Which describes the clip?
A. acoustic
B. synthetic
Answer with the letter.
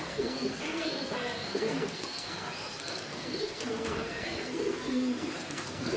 B